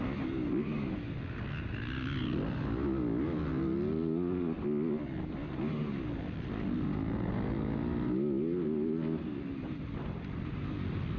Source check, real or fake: real